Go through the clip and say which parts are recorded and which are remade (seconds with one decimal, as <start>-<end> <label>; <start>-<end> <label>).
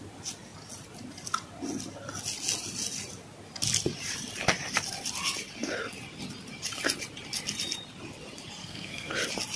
0.0-8.6 recorded; 8.6-9.1 remade; 9.1-9.6 recorded